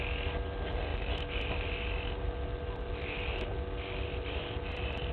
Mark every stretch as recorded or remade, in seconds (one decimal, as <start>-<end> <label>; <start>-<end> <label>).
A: 0.0-5.1 recorded